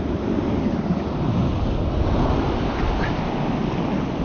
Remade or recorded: recorded